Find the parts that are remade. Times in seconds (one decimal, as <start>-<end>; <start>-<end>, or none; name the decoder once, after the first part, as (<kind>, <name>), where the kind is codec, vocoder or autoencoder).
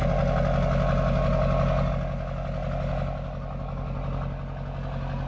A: none